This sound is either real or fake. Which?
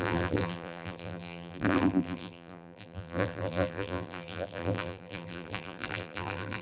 fake